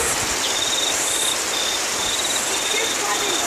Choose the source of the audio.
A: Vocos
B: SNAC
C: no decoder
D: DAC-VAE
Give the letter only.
C